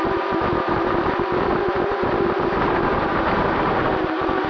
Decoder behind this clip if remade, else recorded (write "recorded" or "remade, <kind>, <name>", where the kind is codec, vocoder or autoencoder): remade, vocoder, BigVGAN v2